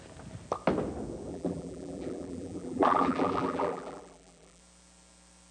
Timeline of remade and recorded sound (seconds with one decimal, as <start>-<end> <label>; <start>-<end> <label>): 0.0-1.3 recorded; 1.3-4.6 remade; 4.6-5.5 recorded